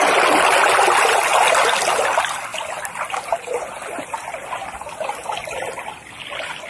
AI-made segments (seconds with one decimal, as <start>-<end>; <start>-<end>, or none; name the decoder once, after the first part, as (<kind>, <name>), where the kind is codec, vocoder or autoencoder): none